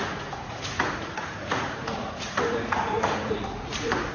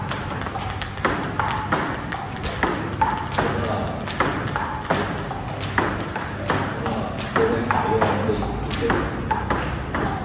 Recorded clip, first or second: second